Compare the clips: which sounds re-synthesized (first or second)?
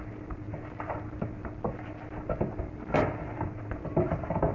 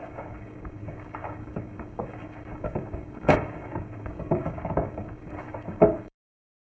second